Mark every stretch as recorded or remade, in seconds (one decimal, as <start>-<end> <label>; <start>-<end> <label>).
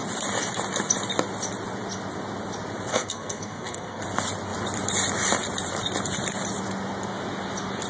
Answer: 0.0-2.9 recorded; 2.9-4.0 remade; 4.0-7.9 recorded